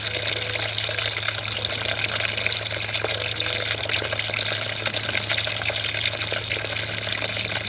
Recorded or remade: recorded